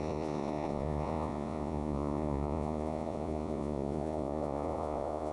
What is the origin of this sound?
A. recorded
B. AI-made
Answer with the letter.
B